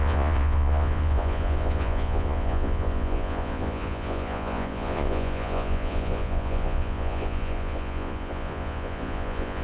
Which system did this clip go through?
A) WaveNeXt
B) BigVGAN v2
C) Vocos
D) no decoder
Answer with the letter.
C